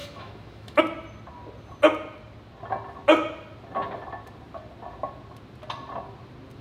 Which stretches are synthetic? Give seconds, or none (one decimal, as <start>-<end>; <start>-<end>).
0.0-0.8